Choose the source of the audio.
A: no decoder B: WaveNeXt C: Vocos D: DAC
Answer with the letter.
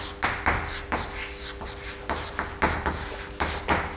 A